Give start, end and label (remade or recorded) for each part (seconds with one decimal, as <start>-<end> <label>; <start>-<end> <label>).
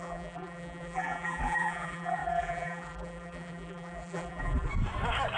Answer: 0.0-4.7 remade; 4.7-5.4 recorded